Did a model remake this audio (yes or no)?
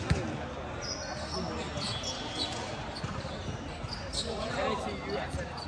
no